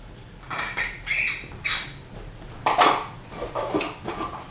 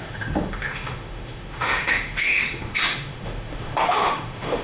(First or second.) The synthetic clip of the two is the second